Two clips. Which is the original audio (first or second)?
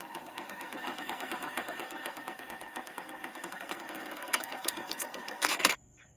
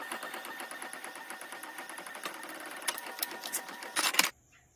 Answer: second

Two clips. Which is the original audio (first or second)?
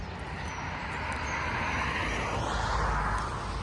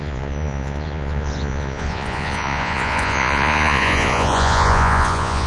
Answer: first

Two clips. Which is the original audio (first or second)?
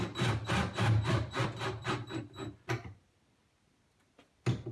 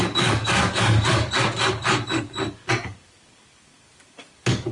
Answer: first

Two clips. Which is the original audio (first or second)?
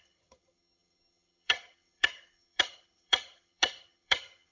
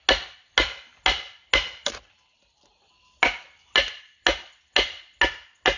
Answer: second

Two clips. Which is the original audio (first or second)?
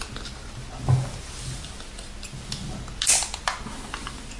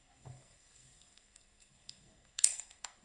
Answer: first